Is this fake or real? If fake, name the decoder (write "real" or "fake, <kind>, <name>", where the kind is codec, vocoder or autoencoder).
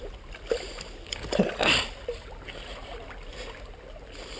real